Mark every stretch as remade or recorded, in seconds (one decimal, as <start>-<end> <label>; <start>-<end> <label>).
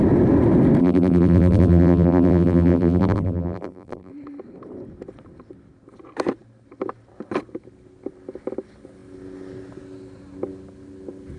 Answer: 0.0-0.8 recorded; 0.8-4.1 remade; 4.1-11.4 recorded